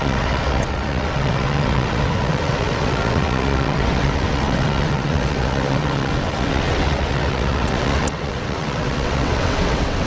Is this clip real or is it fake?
fake